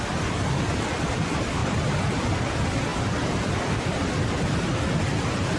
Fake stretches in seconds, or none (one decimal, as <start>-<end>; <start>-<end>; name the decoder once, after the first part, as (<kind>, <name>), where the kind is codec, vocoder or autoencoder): 1.6-2.3 (vocoder, BigVGAN v2); 2.9-4.1; 4.7-5.6